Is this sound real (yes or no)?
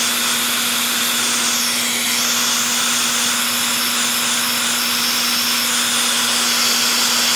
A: yes